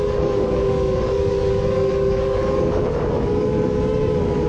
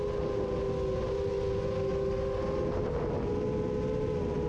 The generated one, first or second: first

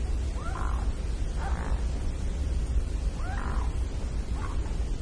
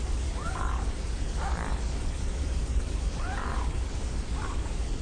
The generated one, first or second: second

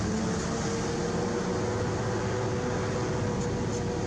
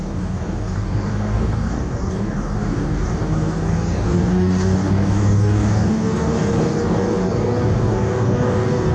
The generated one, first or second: second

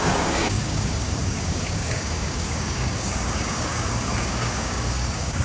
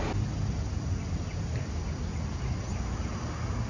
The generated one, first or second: first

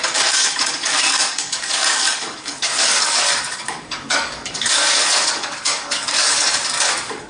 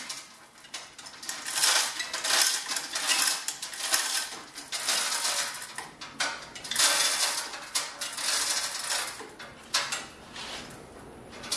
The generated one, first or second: first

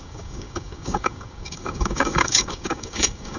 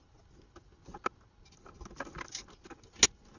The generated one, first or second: first